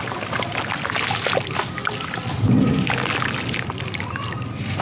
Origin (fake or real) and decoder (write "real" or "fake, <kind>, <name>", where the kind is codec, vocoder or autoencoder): real